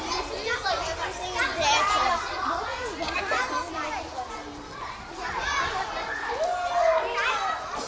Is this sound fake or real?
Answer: real